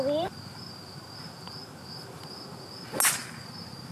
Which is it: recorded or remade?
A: recorded